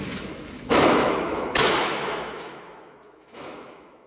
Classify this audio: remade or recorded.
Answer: remade